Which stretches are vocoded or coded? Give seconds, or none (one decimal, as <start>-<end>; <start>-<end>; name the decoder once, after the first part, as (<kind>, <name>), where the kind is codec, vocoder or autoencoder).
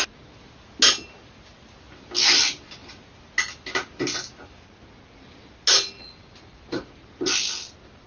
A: none